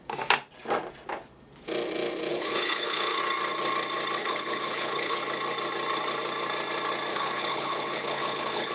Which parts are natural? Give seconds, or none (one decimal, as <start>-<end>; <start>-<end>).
0.0-2.3; 3.2-4.2; 5.2-7.1